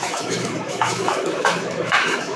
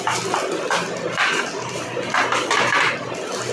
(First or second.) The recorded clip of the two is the second